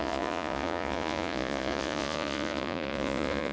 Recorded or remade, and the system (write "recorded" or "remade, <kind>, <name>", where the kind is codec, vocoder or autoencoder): remade, vocoder, Vocos